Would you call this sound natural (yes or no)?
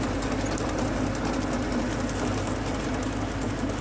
yes